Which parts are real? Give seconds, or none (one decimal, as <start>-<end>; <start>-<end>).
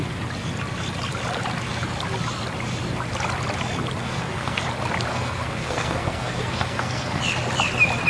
0.0-4.0; 4.6-5.1; 7.2-8.1